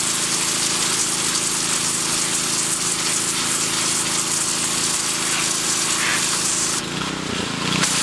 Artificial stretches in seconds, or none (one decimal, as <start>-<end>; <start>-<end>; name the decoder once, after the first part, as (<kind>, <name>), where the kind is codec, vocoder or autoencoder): 6.1-6.8 (vocoder, BigVGAN v2)